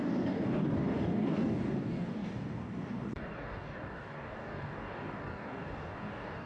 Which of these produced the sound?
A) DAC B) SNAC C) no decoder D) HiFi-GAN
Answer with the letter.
A